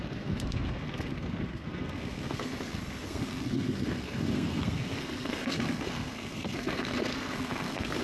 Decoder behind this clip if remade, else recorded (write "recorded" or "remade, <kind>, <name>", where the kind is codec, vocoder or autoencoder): remade, codec, SNAC